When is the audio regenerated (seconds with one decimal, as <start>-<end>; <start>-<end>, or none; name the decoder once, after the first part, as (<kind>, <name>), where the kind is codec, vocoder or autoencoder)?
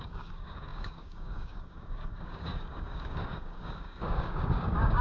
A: 0.0-5.0 (codec, DAC)